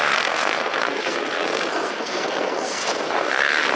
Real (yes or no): no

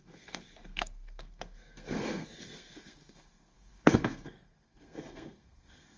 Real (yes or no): no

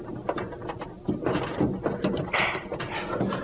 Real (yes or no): yes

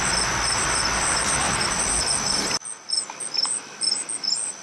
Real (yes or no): yes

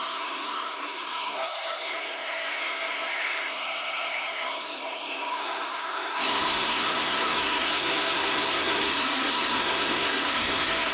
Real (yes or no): no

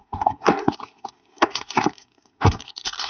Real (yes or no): no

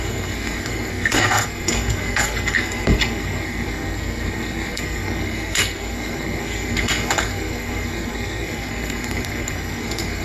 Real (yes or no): no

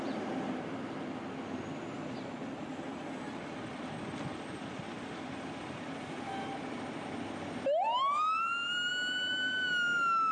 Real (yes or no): yes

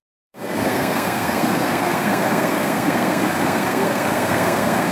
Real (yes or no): no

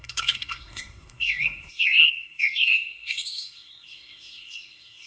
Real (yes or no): no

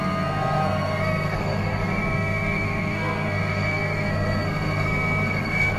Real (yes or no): no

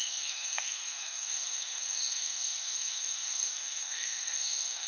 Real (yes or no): no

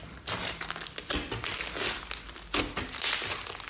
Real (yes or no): yes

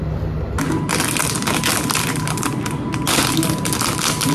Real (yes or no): yes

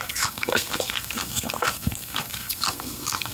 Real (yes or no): no